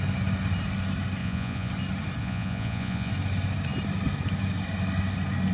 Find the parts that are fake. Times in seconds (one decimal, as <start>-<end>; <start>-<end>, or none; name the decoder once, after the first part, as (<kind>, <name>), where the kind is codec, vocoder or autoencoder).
1.2-1.7 (vocoder, Vocos); 2.2-3.1